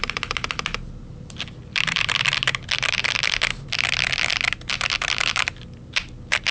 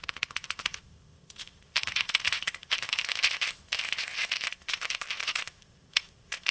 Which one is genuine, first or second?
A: first